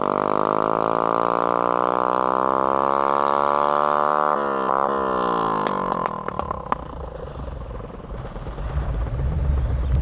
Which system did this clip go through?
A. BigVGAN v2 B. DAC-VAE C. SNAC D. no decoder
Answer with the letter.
D